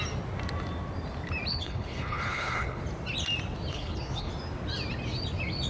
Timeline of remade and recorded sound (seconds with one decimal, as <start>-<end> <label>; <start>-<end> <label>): 0.0-1.5 recorded; 1.5-2.8 remade; 2.8-3.7 recorded; 3.7-4.3 remade; 4.3-5.7 recorded